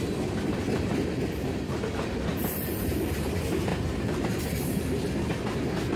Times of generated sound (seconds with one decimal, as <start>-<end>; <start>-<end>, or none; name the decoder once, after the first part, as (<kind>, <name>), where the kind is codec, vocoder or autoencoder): 2.3-3.3 (vocoder, BigVGAN v2); 3.7-4.8